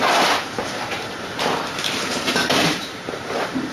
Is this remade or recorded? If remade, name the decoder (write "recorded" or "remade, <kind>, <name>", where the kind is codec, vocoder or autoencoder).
remade, vocoder, BigVGAN v2